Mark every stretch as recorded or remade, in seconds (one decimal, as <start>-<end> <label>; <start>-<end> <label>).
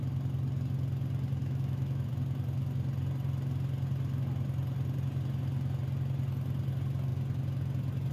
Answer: 0.0-1.4 recorded; 1.4-2.1 remade; 2.1-8.1 recorded